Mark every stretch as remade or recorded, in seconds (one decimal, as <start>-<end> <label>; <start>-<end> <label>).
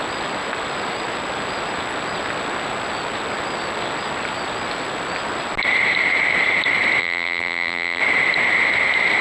0.0-7.0 recorded; 7.0-8.0 remade; 8.0-9.2 recorded